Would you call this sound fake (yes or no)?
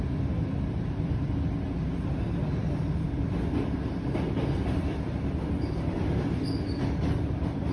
no